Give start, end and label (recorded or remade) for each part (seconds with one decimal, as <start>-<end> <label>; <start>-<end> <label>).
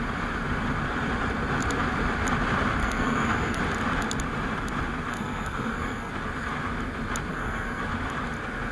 0.0-2.8 recorded; 2.8-3.6 remade; 3.6-5.1 recorded; 5.1-6.1 remade; 6.1-7.3 recorded; 7.3-7.8 remade; 7.8-8.7 recorded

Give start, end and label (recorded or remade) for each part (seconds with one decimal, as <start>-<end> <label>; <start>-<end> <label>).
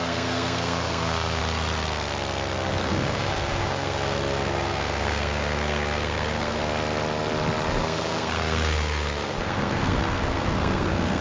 0.0-1.4 remade; 1.4-2.9 recorded; 2.9-6.6 remade; 6.6-7.7 recorded; 7.7-11.2 remade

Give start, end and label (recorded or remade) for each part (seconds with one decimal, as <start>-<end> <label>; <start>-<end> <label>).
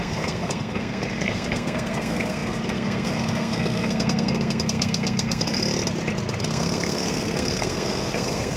0.0-5.7 remade; 5.7-6.4 recorded; 6.4-8.6 remade